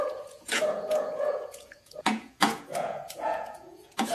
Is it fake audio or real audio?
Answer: fake